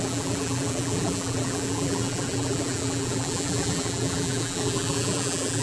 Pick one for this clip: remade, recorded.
remade